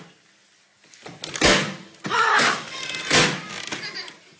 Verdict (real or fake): real